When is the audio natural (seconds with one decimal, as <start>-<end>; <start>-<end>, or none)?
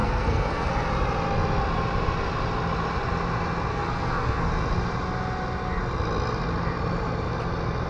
0.7-3.7; 4.5-7.9